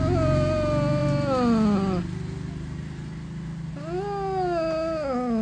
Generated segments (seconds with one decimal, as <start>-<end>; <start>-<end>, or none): none